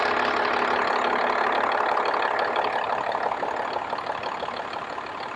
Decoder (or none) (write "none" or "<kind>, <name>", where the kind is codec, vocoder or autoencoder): none